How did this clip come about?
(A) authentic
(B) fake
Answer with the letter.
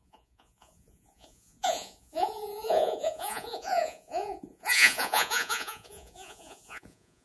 B